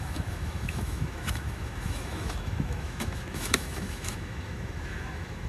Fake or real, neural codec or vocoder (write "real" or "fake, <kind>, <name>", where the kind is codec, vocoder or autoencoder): fake, autoencoder, DAC-VAE